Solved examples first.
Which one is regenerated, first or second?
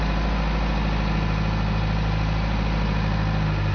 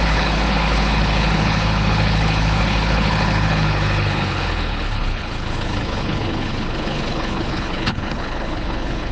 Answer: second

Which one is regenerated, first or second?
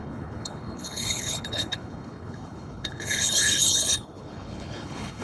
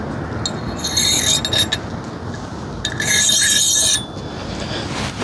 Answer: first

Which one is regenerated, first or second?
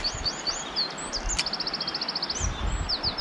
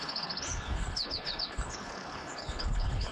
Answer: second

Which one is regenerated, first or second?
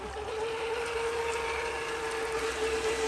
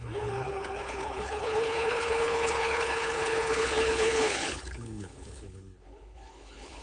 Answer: second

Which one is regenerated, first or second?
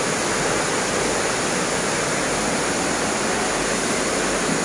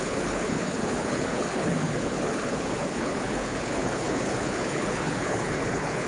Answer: second